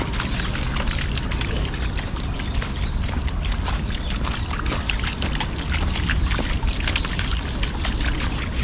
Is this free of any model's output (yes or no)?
yes